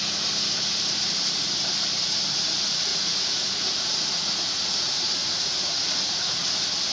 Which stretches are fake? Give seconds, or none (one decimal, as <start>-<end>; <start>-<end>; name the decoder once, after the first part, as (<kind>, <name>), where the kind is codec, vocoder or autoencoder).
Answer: 2.9-6.5 (vocoder, Vocos)